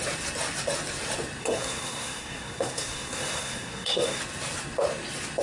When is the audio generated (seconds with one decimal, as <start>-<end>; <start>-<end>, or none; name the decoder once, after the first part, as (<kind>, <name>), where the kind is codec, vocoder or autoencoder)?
1.4-4.2 (codec, SNAC)